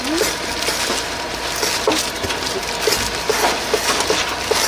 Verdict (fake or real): real